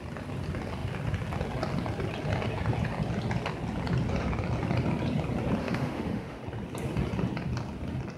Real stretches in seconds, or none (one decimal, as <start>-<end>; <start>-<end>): 0.0-5.6; 6.4-8.2